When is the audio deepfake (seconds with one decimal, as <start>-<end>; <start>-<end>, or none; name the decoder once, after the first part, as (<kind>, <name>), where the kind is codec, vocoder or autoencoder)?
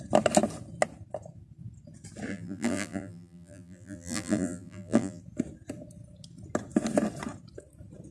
2.3-5.2 (vocoder, BigVGAN v2)